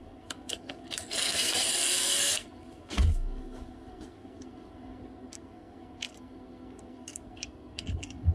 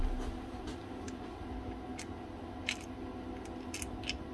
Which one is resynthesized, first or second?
first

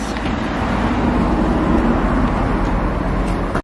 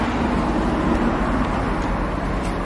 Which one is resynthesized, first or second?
second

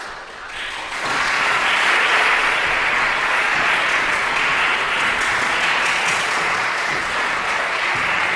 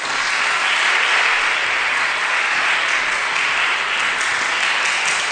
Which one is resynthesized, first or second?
first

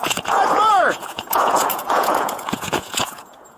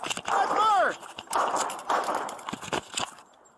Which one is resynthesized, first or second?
first